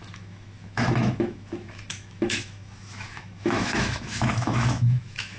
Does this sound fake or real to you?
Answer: fake